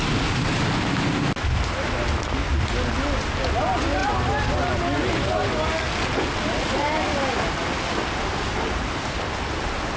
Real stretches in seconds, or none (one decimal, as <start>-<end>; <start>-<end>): 0.0-10.0